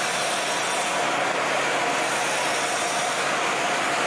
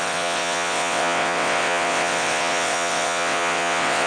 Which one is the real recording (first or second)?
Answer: first